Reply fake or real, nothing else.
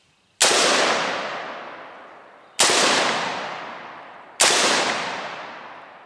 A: real